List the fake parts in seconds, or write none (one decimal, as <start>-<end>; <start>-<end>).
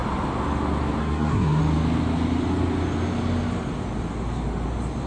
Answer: 1.0-1.6